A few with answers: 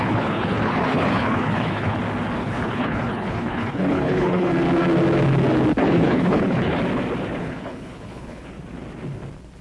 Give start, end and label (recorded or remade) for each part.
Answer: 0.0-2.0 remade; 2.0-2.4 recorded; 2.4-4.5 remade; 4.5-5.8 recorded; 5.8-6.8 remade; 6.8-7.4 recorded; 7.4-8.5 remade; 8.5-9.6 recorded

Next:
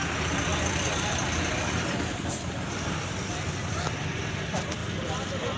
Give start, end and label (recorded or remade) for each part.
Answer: 0.0-4.8 remade; 4.8-5.6 recorded